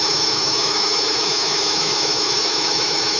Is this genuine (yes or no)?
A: no